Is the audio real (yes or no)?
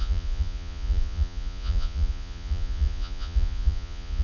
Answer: no